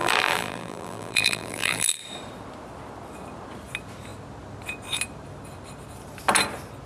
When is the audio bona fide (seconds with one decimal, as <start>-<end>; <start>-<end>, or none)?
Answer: 2.0-6.9